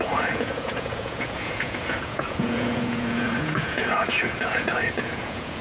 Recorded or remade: remade